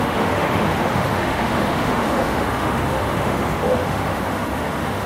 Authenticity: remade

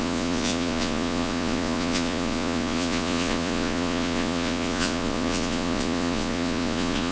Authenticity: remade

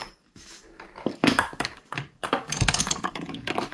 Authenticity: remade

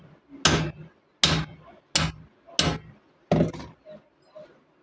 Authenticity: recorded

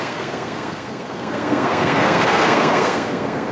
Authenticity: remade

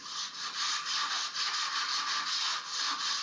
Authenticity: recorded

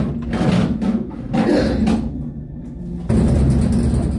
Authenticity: recorded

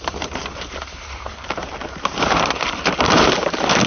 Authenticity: remade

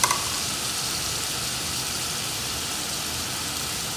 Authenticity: recorded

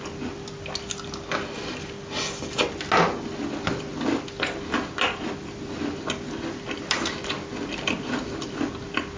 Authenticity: recorded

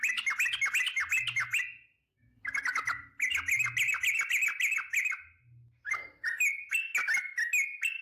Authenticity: recorded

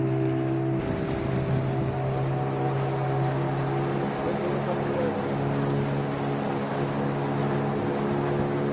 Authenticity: recorded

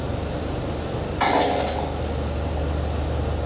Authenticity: recorded